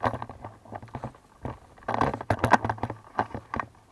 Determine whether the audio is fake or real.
real